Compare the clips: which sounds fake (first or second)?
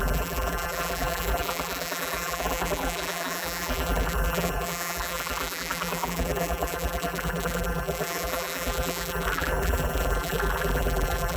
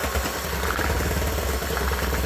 first